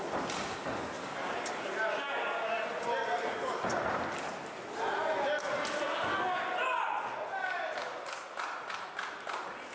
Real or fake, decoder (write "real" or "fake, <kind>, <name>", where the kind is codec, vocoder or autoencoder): real